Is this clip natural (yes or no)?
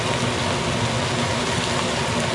yes